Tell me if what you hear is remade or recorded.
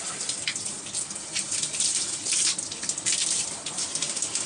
remade